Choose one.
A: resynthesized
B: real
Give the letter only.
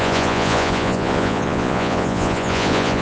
A